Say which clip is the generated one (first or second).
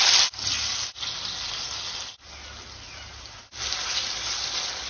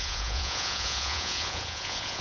second